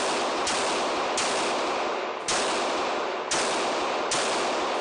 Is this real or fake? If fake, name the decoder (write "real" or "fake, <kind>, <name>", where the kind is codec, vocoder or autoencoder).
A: real